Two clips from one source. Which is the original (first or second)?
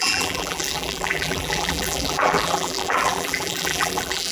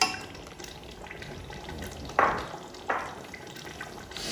second